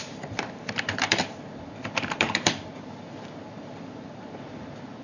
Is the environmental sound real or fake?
fake